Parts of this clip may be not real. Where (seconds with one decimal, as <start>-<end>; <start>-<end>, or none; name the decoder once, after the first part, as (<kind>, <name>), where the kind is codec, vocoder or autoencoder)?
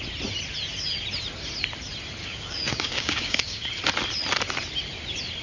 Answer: 2.2-3.7 (codec, DAC)